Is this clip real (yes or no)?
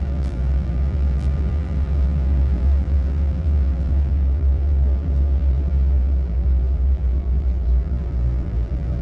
no